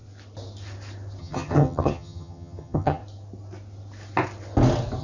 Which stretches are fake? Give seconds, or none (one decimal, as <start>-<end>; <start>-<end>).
1.2-3.0